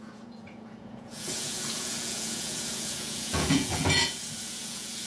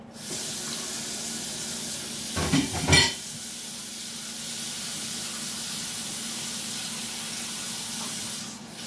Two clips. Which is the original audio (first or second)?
second